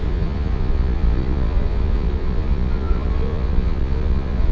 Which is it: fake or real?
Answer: fake